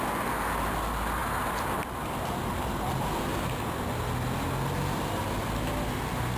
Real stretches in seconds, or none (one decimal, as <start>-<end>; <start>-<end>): 0.0-6.4

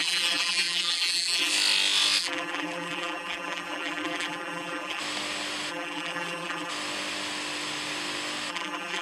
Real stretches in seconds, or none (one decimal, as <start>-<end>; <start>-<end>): 1.5-2.2; 5.0-5.7; 6.7-8.5

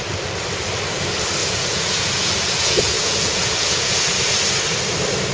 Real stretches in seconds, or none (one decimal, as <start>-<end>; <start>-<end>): 0.0-1.4; 4.2-5.3

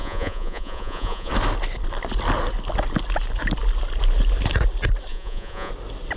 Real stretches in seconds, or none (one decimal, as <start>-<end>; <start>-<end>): 1.3-5.1; 5.7-6.2

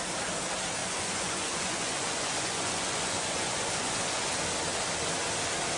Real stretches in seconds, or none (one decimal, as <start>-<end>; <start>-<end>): 0.0-0.8; 4.3-5.8

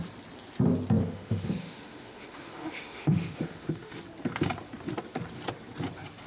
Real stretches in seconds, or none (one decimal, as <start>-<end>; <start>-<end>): 0.0-1.0; 4.0-6.3

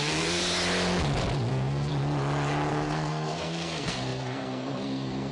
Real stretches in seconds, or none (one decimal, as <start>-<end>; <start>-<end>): 0.4-1.5; 1.9-2.7